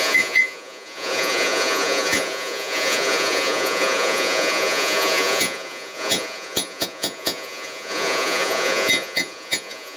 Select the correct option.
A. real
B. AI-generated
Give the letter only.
B